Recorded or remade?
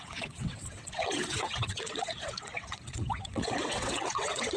remade